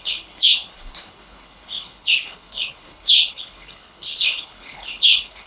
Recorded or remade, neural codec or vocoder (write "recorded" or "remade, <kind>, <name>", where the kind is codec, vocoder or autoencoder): remade, codec, HILCodec